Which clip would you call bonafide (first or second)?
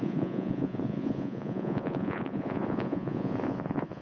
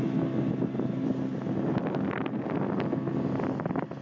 second